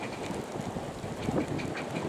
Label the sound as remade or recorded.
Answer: recorded